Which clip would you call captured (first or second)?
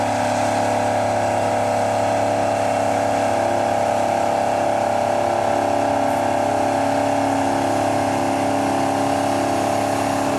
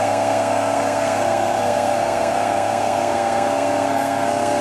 first